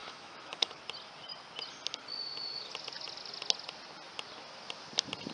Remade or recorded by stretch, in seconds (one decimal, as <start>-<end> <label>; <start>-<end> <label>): 0.0-0.8 remade; 0.8-5.3 recorded